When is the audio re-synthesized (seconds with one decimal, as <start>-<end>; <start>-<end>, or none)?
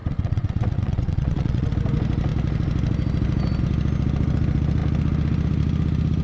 0.0-1.7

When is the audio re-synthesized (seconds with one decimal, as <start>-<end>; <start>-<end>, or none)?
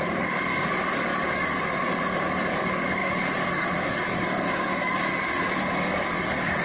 0.0-6.6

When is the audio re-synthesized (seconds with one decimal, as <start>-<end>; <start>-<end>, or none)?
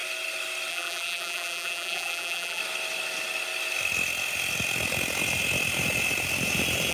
0.7-2.6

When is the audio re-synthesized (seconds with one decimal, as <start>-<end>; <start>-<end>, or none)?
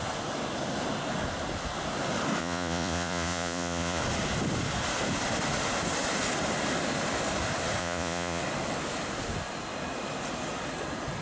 2.4-4.0; 7.8-8.4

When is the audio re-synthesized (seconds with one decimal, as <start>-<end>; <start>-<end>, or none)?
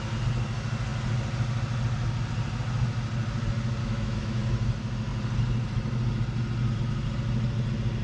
3.8-4.4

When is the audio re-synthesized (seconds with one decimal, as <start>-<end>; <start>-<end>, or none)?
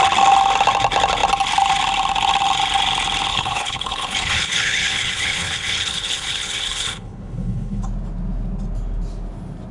3.3-7.8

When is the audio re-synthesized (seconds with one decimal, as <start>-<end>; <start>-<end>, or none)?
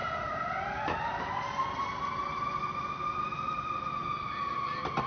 0.0-4.0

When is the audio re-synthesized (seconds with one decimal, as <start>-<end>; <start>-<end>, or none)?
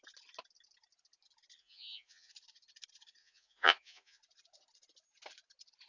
1.6-2.3; 3.2-4.2